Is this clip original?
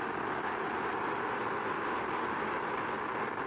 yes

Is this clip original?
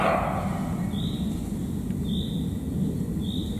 yes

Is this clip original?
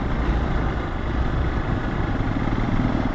no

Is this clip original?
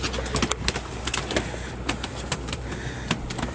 yes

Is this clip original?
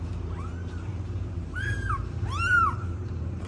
no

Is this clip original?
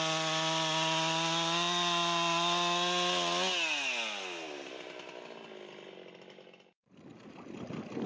yes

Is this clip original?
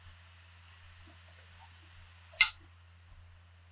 yes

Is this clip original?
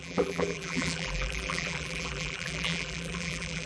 no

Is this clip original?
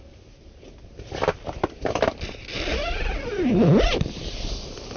yes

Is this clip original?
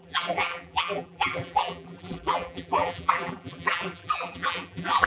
no